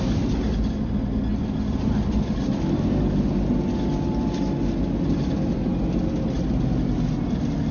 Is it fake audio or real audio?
real